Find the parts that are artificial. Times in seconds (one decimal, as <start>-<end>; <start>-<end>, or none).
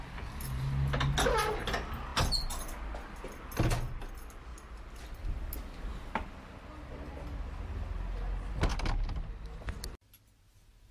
none